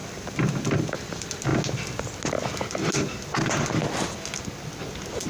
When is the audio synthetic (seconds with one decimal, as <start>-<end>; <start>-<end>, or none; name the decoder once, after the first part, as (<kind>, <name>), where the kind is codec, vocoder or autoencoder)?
0.0-0.9 (vocoder, BigVGAN v2)